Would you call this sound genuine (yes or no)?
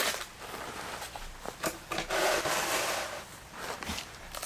yes